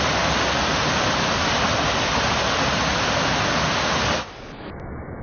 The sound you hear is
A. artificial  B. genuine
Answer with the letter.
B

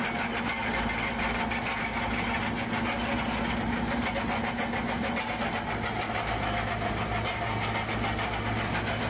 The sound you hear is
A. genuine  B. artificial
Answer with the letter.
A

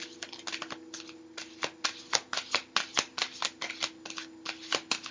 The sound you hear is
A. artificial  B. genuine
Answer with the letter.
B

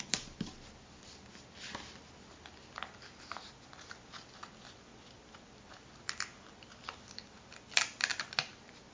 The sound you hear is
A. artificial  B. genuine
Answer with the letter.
B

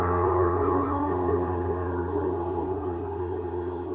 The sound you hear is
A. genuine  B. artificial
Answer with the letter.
B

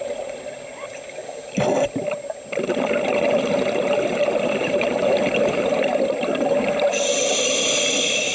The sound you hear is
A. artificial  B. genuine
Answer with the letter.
B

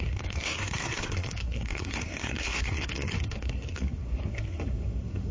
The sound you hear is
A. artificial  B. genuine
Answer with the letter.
A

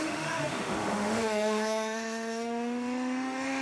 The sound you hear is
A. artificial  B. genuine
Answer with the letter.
A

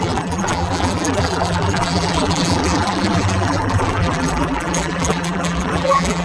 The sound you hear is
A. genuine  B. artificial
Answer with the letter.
B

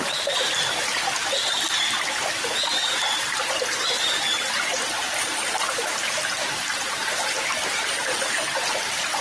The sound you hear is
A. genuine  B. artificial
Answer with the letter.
B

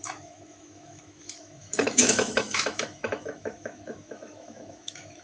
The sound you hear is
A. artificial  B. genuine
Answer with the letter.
A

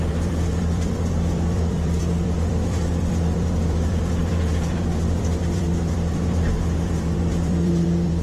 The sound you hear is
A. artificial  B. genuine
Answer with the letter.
A